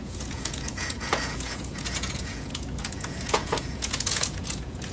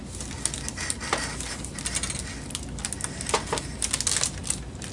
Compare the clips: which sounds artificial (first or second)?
first